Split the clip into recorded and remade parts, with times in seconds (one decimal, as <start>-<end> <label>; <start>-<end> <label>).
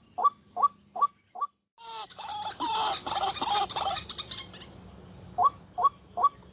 0.0-1.8 recorded; 1.8-2.3 remade; 2.3-6.5 recorded